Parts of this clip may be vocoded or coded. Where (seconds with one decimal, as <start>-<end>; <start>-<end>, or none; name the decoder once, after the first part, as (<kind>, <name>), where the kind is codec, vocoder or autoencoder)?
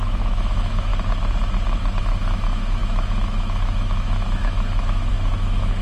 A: 0.0-0.9 (autoencoder, DAC-VAE); 2.0-5.8